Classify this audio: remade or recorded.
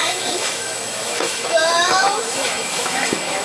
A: remade